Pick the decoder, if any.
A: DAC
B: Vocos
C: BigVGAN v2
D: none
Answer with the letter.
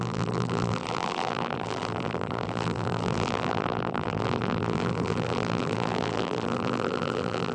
C